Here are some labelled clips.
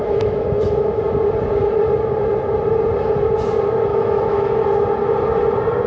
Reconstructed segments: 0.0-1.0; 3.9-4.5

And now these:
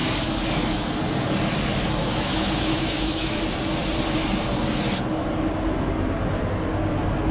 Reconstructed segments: 2.0-3.4

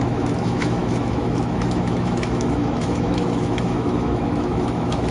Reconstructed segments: 0.0-5.1

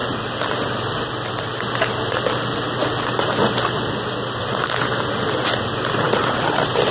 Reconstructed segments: none

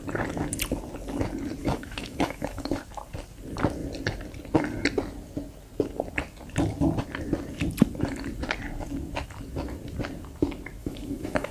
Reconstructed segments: 1.6-2.8; 10.8-11.5

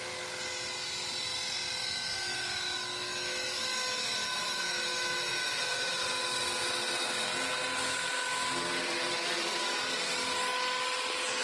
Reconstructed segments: 1.8-5.6